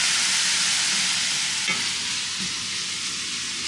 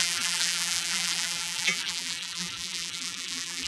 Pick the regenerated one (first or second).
second